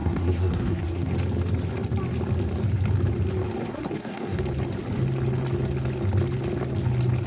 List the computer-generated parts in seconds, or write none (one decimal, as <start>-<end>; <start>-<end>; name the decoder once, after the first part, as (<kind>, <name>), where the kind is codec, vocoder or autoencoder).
0.0-1.1 (codec, SNAC); 3.6-4.4